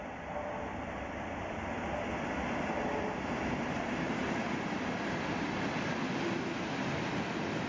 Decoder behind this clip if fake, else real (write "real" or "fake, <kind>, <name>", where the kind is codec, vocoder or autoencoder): real